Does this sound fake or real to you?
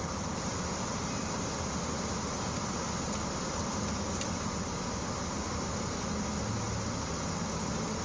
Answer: real